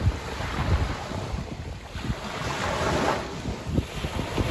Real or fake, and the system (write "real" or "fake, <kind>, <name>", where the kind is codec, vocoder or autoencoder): real